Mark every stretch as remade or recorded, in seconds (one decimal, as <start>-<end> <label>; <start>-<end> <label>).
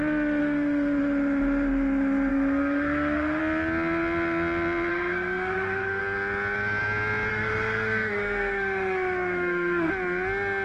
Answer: 0.0-0.4 recorded; 0.4-1.0 remade; 1.0-2.3 recorded; 2.3-3.4 remade; 3.4-4.9 recorded; 4.9-6.0 remade; 6.0-7.3 recorded; 7.3-9.9 remade; 9.9-10.6 recorded